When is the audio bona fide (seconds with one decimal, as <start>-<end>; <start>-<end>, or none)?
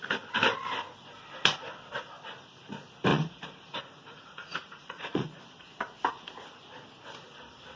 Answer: 0.0-3.1; 5.4-7.8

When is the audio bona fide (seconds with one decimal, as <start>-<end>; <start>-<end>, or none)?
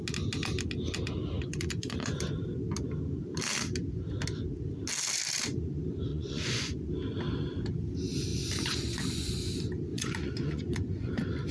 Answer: 0.0-1.4; 2.2-6.1; 6.9-8.3; 9.3-9.9; 11.1-11.5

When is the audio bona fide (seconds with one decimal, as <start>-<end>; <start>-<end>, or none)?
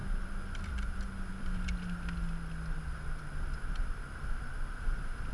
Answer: 0.0-5.3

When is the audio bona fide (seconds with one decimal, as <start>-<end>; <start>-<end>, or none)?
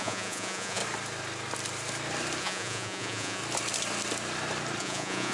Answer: 0.8-2.4; 3.4-4.8